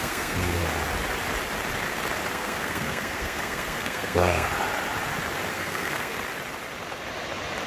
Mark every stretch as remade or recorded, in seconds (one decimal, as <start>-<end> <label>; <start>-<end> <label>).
0.0-0.6 remade; 0.6-2.3 recorded; 2.3-4.5 remade; 4.5-5.5 recorded; 5.5-6.1 remade; 6.1-7.7 recorded